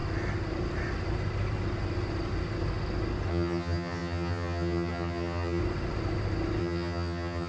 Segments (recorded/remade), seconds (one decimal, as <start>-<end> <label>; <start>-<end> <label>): 0.0-3.3 recorded; 3.3-5.6 remade; 5.6-6.6 recorded; 6.6-7.5 remade